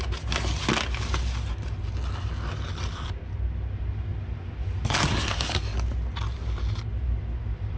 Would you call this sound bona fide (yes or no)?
yes